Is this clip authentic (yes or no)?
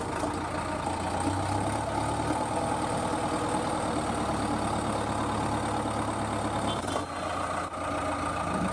yes